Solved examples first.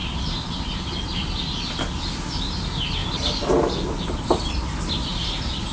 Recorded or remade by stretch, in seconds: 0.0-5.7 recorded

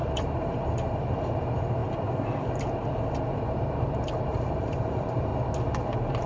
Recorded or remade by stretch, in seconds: 0.0-1.8 remade; 1.8-3.3 recorded; 3.3-5.3 remade; 5.3-5.8 recorded; 5.8-6.3 remade

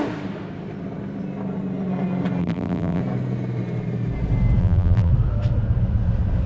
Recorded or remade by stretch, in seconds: 0.0-2.4 recorded; 2.4-3.0 remade; 3.0-4.6 recorded; 4.6-5.1 remade; 5.1-6.5 recorded

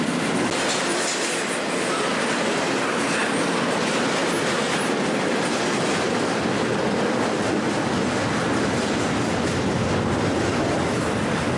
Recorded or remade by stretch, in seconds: 0.0-11.6 recorded

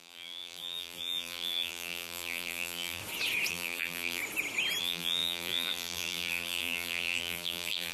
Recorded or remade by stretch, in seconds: 0.0-3.0 remade; 3.0-3.5 recorded; 3.5-4.2 remade; 4.2-4.8 recorded; 4.8-7.9 remade

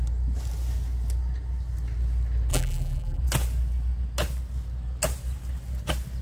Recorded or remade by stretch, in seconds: 0.0-2.5 recorded; 2.5-3.2 remade; 3.2-6.2 recorded

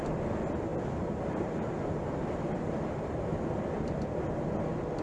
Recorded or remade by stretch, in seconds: 0.0-0.7 recorded; 0.7-3.4 remade; 3.4-5.0 recorded